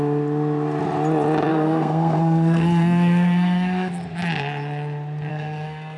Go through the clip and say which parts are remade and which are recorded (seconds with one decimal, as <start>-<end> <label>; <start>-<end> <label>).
0.0-1.5 recorded; 1.5-3.9 remade; 3.9-5.3 recorded; 5.3-6.0 remade